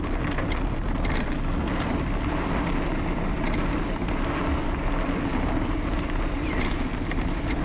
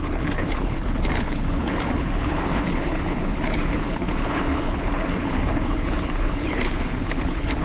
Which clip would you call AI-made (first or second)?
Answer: second